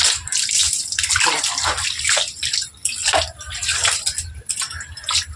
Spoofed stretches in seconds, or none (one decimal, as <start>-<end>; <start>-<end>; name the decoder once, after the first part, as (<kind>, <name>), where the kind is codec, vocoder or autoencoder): 0.6-2.0 (vocoder, BigVGAN v2)